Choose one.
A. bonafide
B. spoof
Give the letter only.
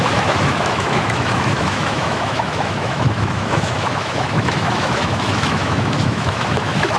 B